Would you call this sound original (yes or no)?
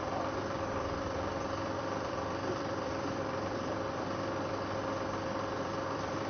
no